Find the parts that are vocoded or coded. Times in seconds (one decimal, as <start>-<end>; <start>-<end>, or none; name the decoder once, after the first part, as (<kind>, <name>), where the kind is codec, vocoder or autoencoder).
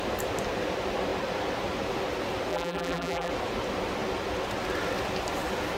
2.5-3.3 (vocoder, BigVGAN v2)